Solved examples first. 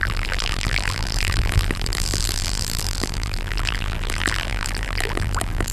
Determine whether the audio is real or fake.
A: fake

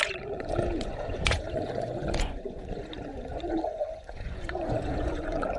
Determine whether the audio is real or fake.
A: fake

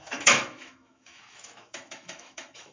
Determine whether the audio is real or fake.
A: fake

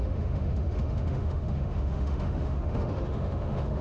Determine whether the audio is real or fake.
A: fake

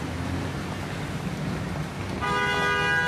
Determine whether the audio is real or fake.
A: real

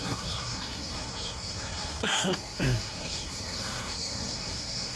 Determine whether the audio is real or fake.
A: fake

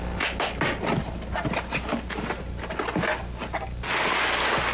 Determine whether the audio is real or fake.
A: real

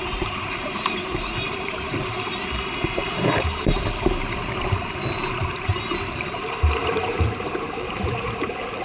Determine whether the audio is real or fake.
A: fake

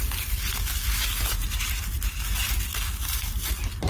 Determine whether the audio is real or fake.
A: real